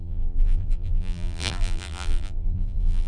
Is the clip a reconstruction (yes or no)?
yes